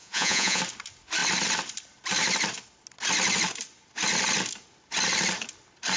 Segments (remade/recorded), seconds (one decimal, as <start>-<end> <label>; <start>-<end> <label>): 0.0-0.6 remade; 0.6-6.0 recorded